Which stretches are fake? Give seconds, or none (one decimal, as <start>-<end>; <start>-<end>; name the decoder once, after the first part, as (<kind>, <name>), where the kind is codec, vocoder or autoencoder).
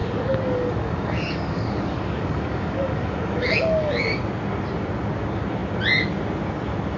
0.0-4.2 (codec, DAC)